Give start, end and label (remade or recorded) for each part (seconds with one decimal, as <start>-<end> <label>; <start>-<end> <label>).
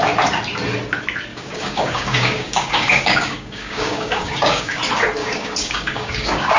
0.0-1.3 recorded; 1.3-4.8 remade; 4.8-5.2 recorded; 5.2-6.6 remade